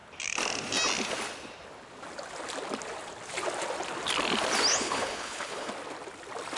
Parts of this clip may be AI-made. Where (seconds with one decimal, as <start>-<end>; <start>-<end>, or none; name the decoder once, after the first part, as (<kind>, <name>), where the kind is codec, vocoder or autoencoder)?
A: 4.7-5.7 (codec, HILCodec)